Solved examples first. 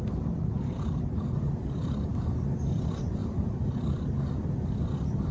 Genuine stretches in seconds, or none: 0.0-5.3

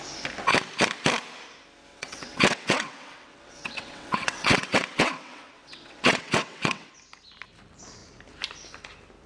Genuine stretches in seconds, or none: 0.0-1.9; 6.9-9.3

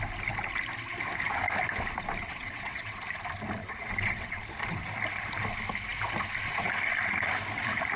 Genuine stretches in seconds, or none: 0.0-2.2; 3.0-3.6; 4.4-8.0

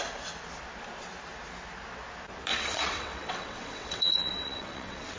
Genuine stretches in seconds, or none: 0.0-2.5

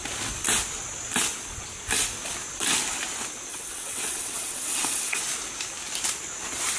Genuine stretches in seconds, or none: 0.0-3.5; 5.2-6.8

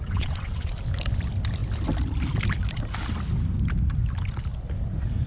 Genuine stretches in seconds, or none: 0.7-5.3

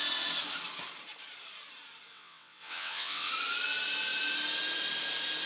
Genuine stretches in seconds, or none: 0.0-2.1; 3.3-5.5

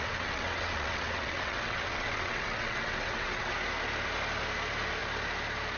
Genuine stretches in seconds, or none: 3.5-5.8